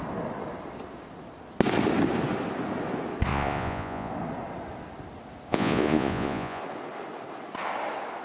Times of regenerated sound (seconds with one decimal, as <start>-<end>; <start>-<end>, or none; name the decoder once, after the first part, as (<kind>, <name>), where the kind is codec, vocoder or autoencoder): 3.3-4.1 (vocoder, Vocos); 5.5-6.6